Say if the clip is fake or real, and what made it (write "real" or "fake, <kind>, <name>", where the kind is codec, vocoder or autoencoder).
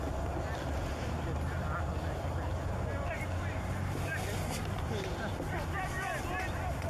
real